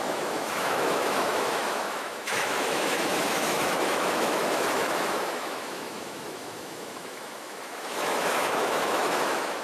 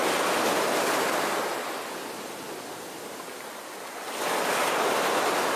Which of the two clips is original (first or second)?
second